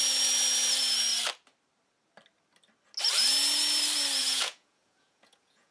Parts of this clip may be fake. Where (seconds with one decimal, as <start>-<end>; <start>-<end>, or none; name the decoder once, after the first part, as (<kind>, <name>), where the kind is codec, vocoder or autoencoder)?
4.2-5.7 (vocoder, Vocos)